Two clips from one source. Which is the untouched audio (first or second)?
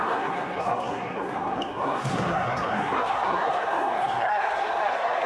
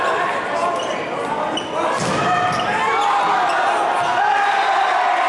second